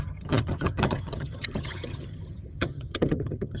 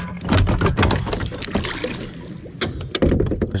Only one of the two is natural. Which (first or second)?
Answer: second